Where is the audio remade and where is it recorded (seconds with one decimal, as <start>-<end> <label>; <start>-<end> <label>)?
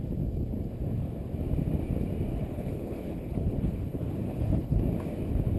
0.0-2.3 recorded; 2.3-4.8 remade; 4.8-5.6 recorded